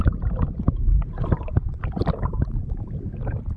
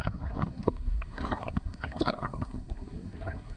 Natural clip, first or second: first